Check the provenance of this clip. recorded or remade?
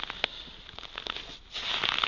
recorded